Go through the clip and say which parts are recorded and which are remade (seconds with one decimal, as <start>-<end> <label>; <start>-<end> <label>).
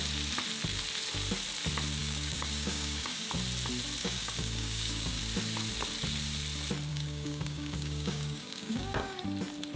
0.0-2.0 recorded; 2.0-3.3 remade; 3.3-4.0 recorded; 4.0-5.2 remade; 5.2-6.9 recorded; 6.9-9.2 remade; 9.2-9.8 recorded